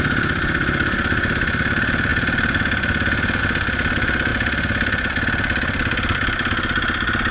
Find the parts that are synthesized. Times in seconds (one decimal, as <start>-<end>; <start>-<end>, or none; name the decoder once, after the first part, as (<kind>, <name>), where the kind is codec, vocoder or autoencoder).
none